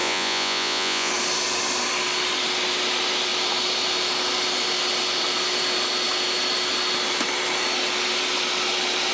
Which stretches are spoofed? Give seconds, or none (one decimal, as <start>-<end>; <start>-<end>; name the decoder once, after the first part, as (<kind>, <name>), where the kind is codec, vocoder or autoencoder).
0.0-1.1 (vocoder, Vocos)